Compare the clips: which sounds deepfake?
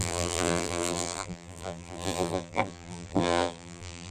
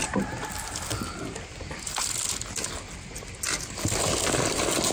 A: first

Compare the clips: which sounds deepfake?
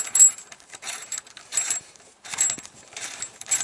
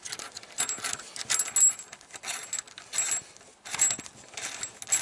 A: first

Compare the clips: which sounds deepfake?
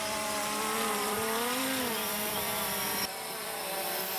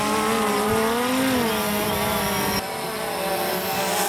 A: first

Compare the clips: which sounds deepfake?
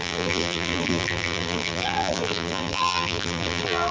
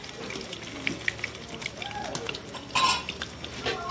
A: first